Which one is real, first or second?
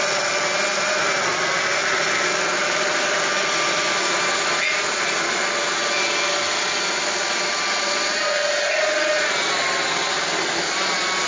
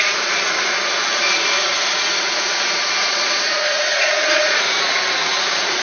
first